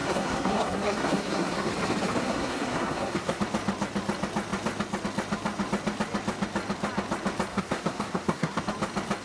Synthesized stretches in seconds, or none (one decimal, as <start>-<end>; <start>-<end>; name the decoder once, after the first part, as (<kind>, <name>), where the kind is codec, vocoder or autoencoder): 0.0-1.7 (codec, SNAC); 2.2-3.4; 7.5-8.6